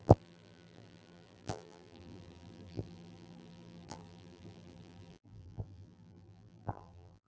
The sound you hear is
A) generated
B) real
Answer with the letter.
A